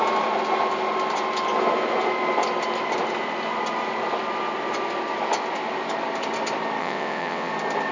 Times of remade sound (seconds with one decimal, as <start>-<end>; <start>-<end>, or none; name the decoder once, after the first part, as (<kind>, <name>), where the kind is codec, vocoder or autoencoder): 6.8-7.5 (vocoder, WaveNeXt)